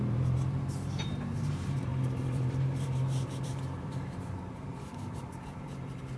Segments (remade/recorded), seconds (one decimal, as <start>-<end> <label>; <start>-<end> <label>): 0.0-6.2 remade